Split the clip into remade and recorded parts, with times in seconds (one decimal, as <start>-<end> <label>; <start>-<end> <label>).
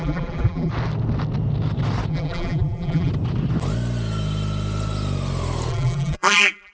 0.0-0.7 remade; 0.7-2.1 recorded; 2.1-3.1 remade; 3.1-5.7 recorded; 5.7-6.7 remade